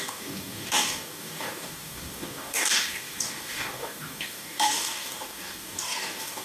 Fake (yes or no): yes